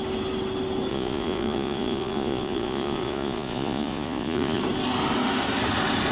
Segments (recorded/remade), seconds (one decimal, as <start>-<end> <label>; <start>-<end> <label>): 0.0-0.9 recorded; 0.9-4.6 remade; 4.6-6.1 recorded